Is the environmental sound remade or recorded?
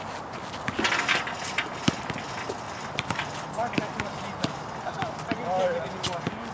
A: recorded